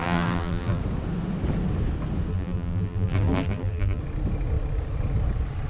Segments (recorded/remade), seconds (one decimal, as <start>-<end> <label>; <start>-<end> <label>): 0.0-0.8 remade; 0.8-2.3 recorded; 2.3-4.0 remade; 4.0-5.7 recorded